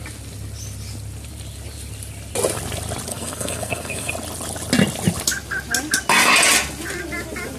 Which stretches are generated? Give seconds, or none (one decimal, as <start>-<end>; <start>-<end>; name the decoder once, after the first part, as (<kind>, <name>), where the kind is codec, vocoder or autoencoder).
3.1-4.1 (codec, SNAC)